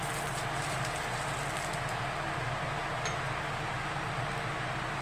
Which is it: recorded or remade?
recorded